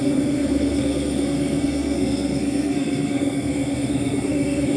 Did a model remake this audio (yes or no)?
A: yes